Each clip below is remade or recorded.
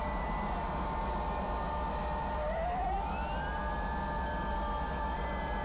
recorded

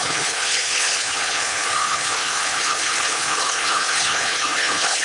remade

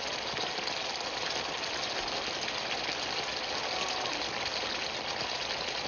recorded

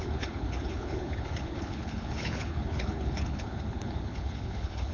remade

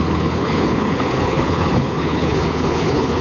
remade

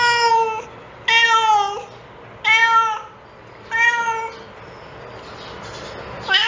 recorded